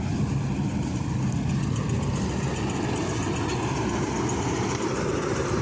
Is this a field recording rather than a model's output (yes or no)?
yes